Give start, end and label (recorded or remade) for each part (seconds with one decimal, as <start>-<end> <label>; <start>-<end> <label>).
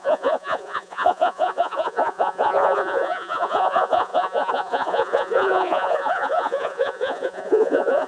0.0-8.1 remade